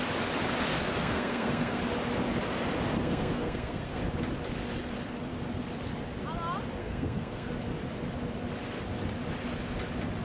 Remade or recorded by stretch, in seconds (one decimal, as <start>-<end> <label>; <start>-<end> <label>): 0.0-1.0 recorded; 1.0-1.8 remade; 1.8-3.0 recorded; 3.0-4.0 remade; 4.0-6.8 recorded; 6.8-7.5 remade; 7.5-10.2 recorded